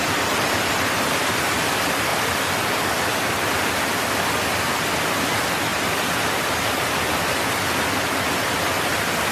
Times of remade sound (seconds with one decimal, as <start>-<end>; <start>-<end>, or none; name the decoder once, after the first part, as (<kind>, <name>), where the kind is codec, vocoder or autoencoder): 2.1-4.7 (vocoder, BigVGAN v2); 5.7-6.3